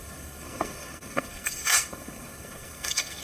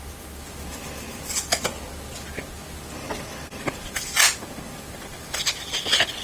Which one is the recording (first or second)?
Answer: second